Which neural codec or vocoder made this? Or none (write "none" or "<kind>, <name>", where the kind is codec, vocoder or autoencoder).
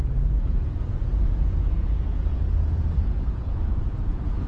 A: vocoder, Vocos